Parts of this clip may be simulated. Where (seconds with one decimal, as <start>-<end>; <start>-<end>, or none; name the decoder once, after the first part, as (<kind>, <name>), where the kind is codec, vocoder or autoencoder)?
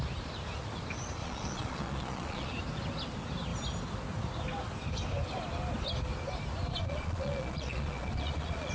1.2-2.5 (vocoder, Vocos); 6.7-8.7